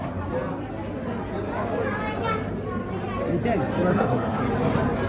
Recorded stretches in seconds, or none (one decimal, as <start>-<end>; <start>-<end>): 0.0-3.9; 4.4-5.1